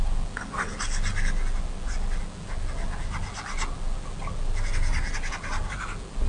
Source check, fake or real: real